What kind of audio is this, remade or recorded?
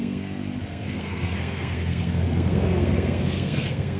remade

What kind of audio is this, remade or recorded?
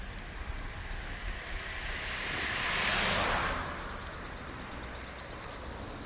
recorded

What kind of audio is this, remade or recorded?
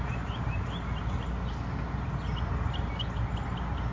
recorded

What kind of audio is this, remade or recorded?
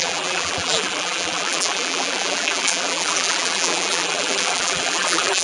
remade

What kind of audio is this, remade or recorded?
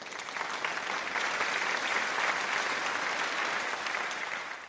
recorded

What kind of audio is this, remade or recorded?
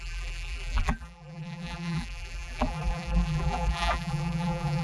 remade